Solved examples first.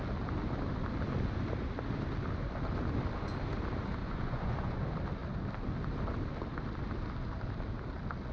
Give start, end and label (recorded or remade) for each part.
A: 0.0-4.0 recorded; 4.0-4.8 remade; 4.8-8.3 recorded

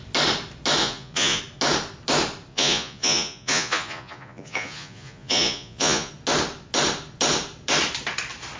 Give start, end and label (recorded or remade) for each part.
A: 0.0-0.8 recorded; 0.8-1.4 remade; 1.4-2.5 recorded; 2.5-6.1 remade; 6.1-8.6 recorded

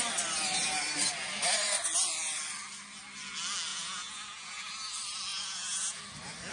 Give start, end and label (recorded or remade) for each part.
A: 0.0-3.7 recorded; 3.7-4.7 remade; 4.7-5.3 recorded; 5.3-6.0 remade; 6.0-6.5 recorded

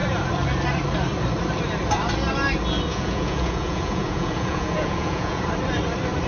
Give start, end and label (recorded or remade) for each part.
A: 0.0-2.9 recorded; 2.9-5.4 remade; 5.4-6.3 recorded

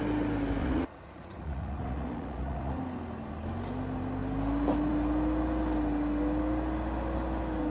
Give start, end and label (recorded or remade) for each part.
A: 0.0-0.6 recorded; 0.6-2.8 remade; 2.8-7.7 recorded

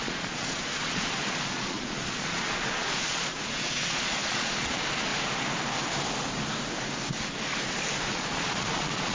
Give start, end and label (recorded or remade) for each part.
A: 0.0-5.1 remade; 5.1-8.1 recorded; 8.1-9.1 remade

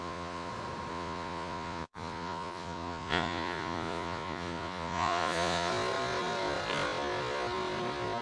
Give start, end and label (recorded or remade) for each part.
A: 0.0-0.5 remade; 0.5-0.9 recorded; 0.9-5.7 remade; 5.7-8.2 recorded